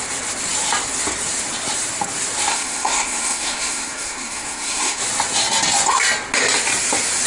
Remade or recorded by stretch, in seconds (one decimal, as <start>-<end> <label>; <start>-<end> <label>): 0.0-2.5 recorded; 2.5-5.0 remade; 5.0-7.3 recorded